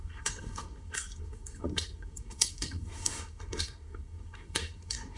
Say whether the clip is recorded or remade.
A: remade